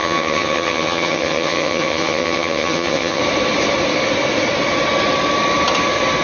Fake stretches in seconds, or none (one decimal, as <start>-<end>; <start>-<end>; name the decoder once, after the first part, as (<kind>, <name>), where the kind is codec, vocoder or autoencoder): 0.0-3.2 (vocoder, HiFi-GAN)